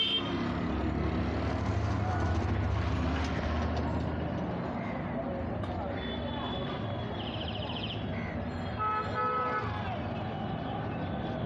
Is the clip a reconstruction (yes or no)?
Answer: no